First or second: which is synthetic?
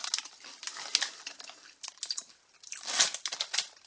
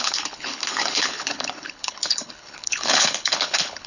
second